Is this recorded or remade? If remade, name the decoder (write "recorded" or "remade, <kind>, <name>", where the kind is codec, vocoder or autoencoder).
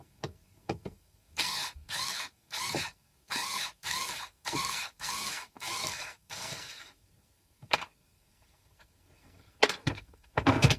remade, codec, SNAC